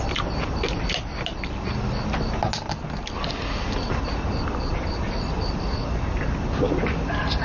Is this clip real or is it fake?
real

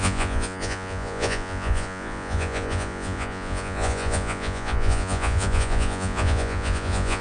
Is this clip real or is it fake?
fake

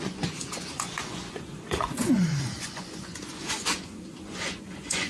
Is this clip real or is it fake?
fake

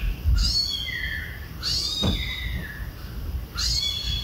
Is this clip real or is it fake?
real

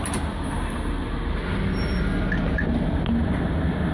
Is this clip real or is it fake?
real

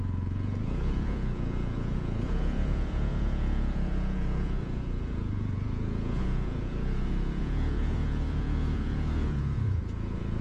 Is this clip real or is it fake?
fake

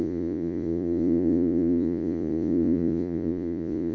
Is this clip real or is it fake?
fake